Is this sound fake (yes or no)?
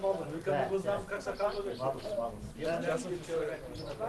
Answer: no